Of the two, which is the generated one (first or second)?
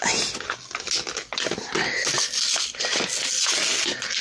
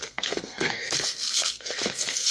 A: second